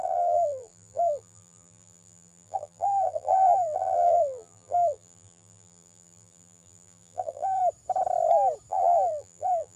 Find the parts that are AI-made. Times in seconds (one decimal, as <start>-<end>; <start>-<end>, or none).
0.0-7.6; 8.7-9.8